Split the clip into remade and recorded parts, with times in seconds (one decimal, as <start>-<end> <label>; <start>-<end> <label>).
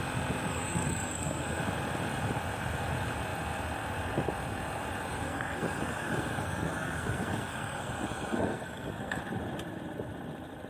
0.0-0.5 recorded; 0.5-1.6 remade; 1.6-5.1 recorded; 5.1-9.2 remade; 9.2-10.7 recorded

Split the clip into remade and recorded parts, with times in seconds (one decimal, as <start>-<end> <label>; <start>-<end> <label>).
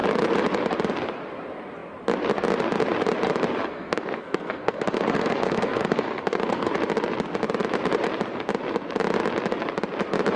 0.0-3.6 recorded; 3.6-6.7 remade; 6.7-10.4 recorded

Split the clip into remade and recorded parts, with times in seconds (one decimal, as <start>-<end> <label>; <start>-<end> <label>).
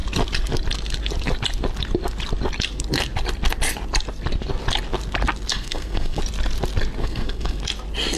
0.0-5.5 recorded; 5.5-6.2 remade; 6.2-7.0 recorded; 7.0-7.6 remade; 7.6-8.2 recorded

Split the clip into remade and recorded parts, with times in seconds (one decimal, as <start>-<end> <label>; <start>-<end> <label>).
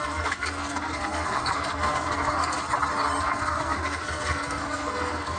0.0-2.6 remade; 2.6-3.2 recorded; 3.2-5.4 remade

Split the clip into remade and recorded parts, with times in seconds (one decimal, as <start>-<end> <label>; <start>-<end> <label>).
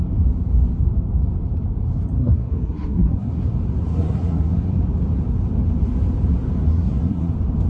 0.0-2.2 recorded; 2.2-3.5 remade; 3.5-3.9 recorded; 3.9-4.7 remade; 4.7-6.7 recorded; 6.7-7.3 remade; 7.3-7.7 recorded